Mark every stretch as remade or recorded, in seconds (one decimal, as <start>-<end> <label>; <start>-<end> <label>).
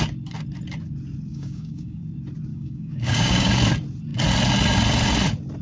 0.0-1.3 recorded; 1.3-2.0 remade; 2.0-2.5 recorded; 2.5-3.5 remade; 3.5-5.6 recorded